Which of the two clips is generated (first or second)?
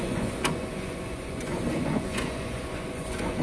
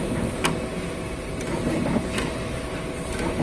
first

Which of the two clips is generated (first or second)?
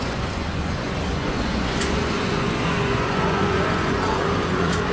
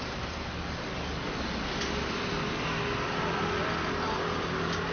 first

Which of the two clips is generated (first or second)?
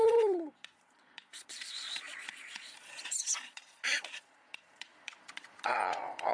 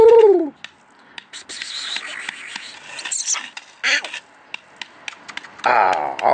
first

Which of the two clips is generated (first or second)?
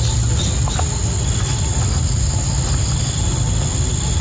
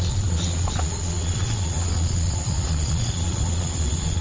second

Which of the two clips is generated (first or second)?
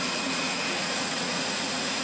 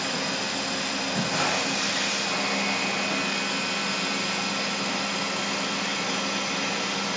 first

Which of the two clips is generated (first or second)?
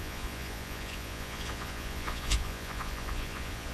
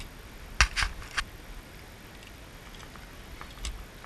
first